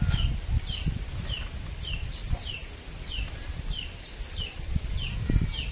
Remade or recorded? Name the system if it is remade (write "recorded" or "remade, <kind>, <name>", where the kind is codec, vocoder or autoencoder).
remade, vocoder, BigVGAN v2